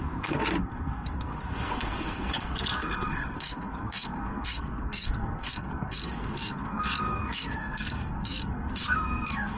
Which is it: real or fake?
fake